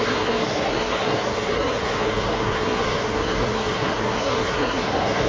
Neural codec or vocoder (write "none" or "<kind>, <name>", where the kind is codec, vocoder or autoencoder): codec, SNAC